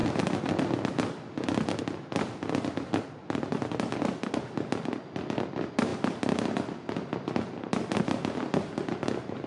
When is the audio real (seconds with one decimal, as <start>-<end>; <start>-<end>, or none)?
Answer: 0.0-9.5